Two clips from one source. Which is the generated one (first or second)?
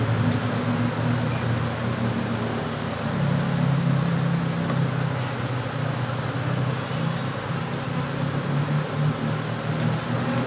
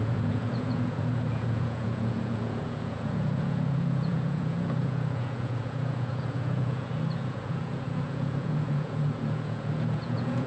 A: second